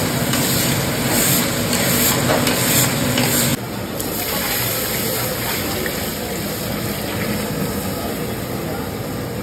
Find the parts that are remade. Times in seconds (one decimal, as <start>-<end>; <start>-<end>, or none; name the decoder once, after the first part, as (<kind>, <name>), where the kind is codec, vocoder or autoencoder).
none